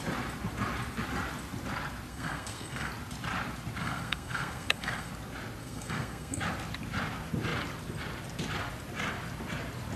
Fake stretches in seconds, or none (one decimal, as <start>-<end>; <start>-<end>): 2.1-2.9; 3.8-5.1; 5.6-6.4